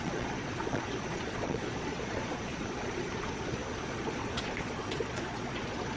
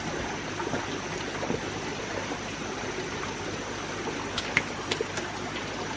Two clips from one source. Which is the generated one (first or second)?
first